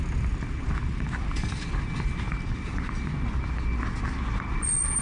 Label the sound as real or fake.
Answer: real